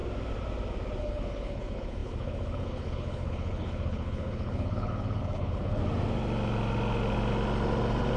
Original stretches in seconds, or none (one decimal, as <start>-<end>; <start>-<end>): 0.0-1.0; 5.8-8.2